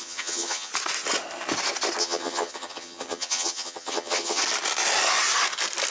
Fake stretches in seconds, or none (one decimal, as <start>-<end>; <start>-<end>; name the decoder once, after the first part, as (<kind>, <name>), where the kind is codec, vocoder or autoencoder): 0.0-0.7 (vocoder, HiFi-GAN); 2.0-4.4